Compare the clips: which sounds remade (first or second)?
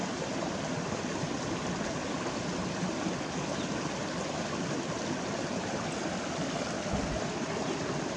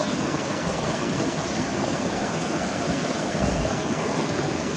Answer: second